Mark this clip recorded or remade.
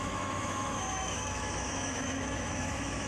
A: remade